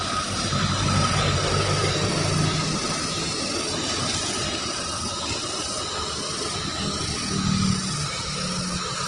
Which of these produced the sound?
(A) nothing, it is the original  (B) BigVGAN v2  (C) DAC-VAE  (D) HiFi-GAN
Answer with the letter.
A